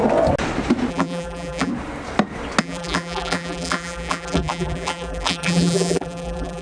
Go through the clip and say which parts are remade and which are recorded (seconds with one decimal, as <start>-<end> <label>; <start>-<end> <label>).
0.0-0.9 recorded; 0.9-1.7 remade; 1.7-2.6 recorded; 2.6-6.6 remade